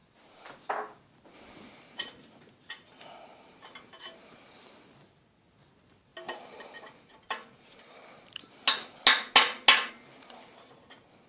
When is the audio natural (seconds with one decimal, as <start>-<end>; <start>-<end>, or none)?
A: 0.0-11.3